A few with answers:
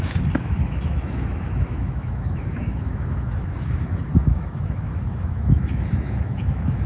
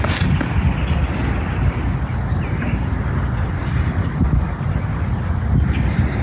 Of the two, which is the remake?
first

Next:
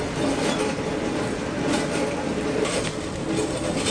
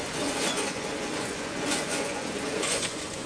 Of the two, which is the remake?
second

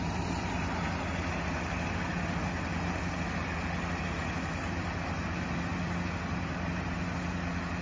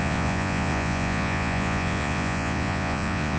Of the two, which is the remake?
second